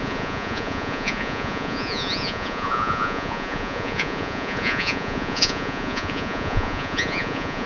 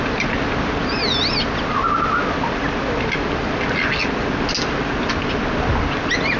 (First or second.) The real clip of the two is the second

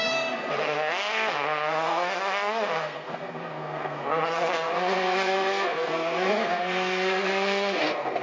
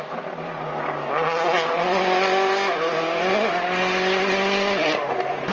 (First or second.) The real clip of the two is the second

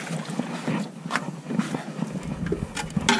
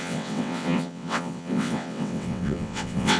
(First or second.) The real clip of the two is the first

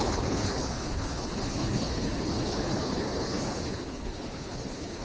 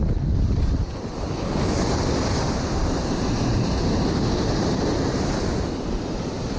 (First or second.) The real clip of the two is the second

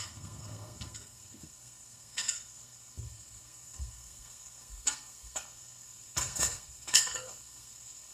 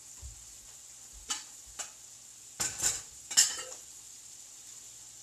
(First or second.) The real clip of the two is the second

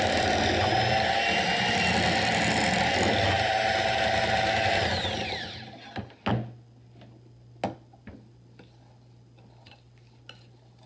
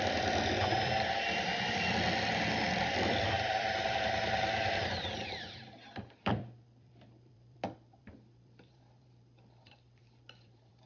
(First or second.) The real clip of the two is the first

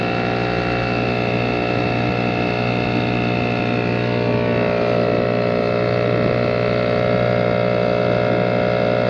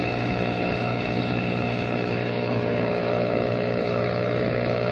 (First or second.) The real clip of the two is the first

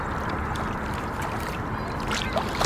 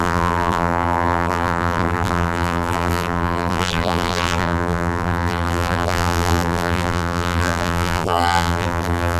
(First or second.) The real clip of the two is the first